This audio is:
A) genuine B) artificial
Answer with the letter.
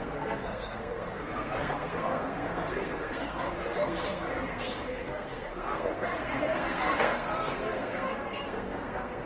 B